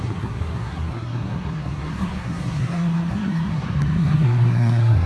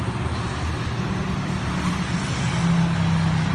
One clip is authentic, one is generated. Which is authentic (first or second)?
second